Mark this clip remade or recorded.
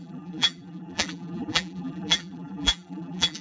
remade